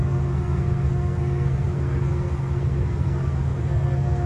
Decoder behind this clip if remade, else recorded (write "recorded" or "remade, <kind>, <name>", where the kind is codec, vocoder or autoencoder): remade, codec, SNAC